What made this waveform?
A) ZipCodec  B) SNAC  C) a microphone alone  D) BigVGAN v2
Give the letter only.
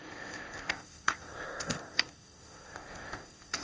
A